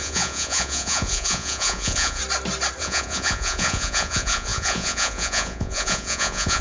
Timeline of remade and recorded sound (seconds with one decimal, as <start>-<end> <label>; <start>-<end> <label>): 0.0-2.2 remade; 2.2-2.8 recorded; 2.8-6.6 remade